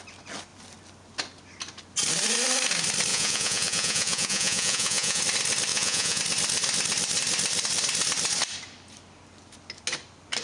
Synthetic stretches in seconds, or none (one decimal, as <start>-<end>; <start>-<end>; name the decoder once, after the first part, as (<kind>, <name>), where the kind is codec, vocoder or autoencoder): 3.1-5.2 (vocoder, Vocos); 5.7-6.2